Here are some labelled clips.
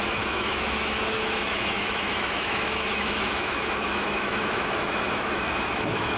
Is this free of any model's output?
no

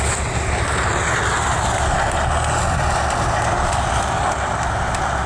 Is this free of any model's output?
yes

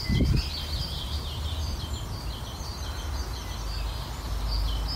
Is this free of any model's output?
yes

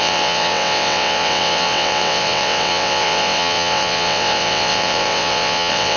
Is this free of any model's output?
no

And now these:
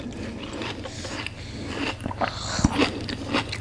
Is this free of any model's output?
yes